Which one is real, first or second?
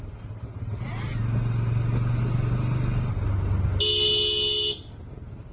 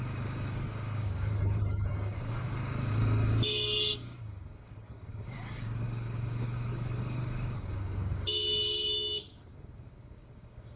first